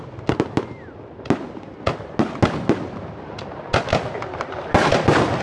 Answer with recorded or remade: recorded